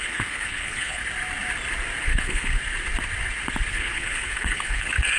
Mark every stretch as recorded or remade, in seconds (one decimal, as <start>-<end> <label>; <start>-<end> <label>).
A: 0.0-1.0 remade; 1.0-2.0 recorded; 2.0-2.6 remade; 2.6-3.7 recorded; 3.7-5.2 remade